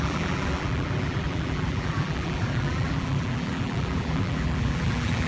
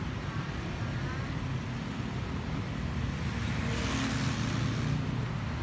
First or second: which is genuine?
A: second